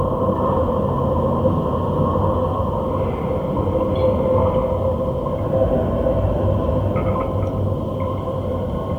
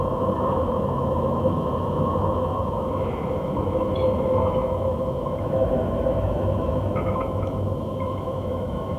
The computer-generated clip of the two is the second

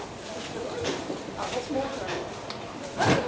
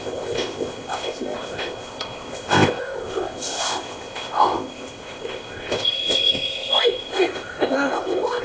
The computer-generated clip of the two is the second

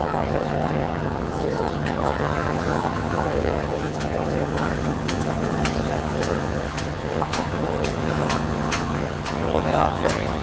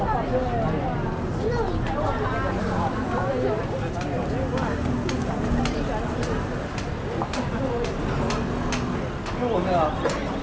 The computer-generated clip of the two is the first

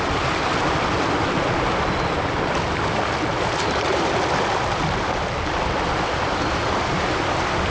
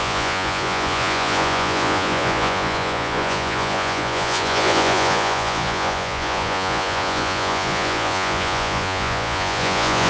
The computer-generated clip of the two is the second